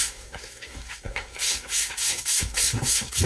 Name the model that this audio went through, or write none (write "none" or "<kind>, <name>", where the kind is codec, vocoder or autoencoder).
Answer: codec, SNAC